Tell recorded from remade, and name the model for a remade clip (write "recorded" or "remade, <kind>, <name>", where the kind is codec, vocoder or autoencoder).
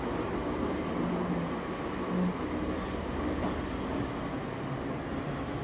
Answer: recorded